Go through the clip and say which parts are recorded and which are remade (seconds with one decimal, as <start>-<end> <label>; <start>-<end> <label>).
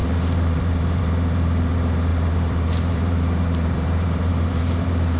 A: 0.0-5.2 remade